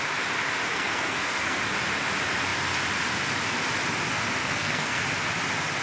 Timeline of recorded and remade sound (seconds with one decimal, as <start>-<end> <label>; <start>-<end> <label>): 0.0-0.7 recorded; 0.7-1.6 remade; 1.6-4.4 recorded; 4.4-5.0 remade; 5.0-5.8 recorded